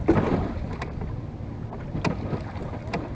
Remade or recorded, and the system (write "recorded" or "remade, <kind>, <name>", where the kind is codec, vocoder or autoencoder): recorded